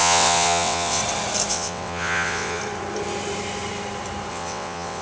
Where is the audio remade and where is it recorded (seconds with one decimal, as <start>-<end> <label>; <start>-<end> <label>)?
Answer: 0.0-1.0 remade; 1.0-1.5 recorded; 1.5-2.6 remade; 2.6-4.3 recorded; 4.3-5.0 remade